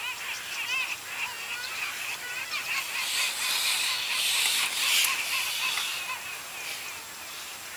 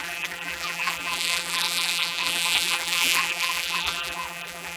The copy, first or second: second